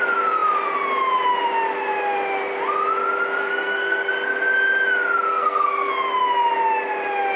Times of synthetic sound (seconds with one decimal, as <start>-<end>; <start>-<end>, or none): 3.4-4.1; 5.3-5.9